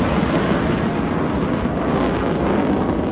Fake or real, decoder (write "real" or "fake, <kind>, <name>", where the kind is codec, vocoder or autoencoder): real